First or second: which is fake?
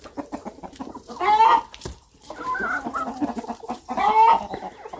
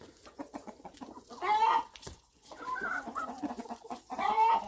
second